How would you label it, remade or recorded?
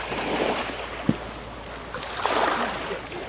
recorded